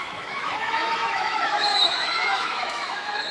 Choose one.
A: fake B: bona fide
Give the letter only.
A